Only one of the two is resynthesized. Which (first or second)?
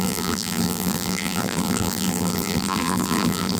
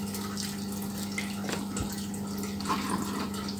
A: first